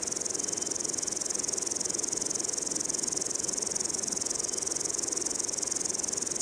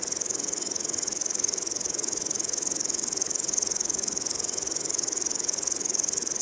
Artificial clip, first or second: second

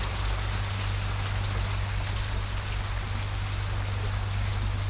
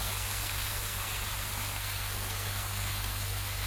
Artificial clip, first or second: second